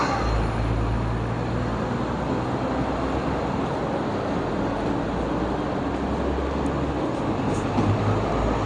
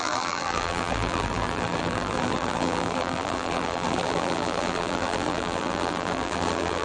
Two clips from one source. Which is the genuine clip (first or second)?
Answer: first